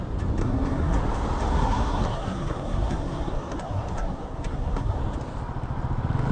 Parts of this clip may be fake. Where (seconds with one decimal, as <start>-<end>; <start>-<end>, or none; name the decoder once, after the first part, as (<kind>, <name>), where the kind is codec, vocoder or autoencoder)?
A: 0.4-1.0 (codec, SNAC); 1.5-5.0